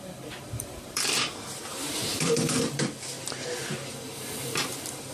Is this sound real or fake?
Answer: fake